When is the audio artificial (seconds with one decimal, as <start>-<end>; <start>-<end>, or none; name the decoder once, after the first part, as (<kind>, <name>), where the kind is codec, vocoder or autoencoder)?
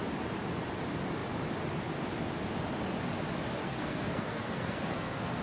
3.6-5.4 (codec, SNAC)